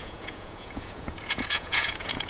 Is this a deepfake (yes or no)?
yes